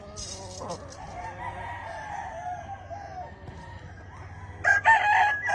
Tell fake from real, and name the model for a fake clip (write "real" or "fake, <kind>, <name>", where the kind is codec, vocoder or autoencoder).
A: real